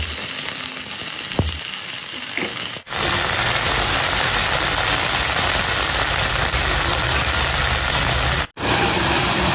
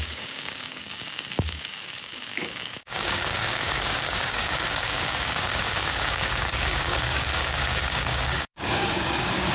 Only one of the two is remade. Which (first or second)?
second